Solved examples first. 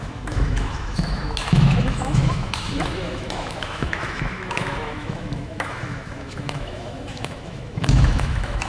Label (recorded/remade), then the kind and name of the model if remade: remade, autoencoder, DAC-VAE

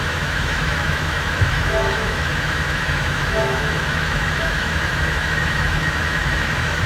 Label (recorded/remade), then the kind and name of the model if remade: remade, autoencoder, DAC-VAE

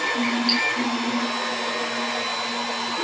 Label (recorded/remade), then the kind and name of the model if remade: recorded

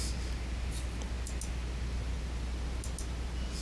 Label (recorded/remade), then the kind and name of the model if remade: recorded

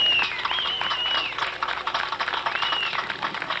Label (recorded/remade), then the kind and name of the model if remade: recorded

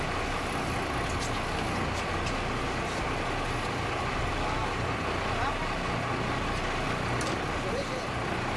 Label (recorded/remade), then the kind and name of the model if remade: recorded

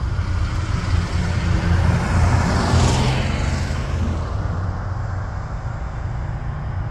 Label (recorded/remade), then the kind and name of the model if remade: recorded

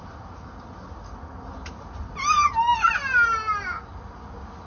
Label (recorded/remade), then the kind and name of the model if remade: recorded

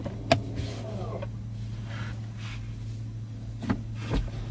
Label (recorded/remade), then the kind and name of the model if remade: recorded